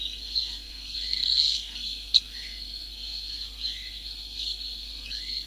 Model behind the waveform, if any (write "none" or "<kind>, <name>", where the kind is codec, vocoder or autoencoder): codec, SNAC